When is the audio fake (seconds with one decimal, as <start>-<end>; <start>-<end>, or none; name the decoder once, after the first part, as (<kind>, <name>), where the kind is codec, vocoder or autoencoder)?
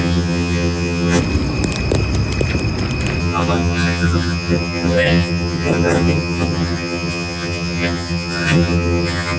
0.0-1.2 (vocoder, HiFi-GAN); 3.2-9.4